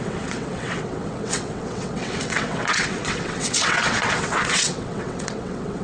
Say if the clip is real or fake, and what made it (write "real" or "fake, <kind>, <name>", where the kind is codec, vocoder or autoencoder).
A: fake, vocoder, WaveNeXt